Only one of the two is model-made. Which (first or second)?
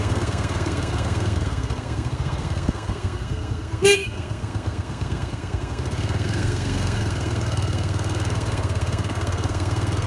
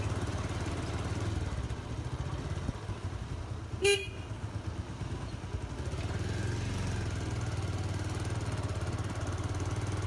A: first